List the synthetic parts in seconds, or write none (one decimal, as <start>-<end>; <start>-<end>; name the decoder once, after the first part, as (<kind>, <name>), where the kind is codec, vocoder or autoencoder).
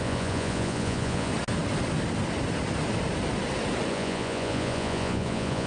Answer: 0.0-1.3 (vocoder, Vocos); 3.9-5.7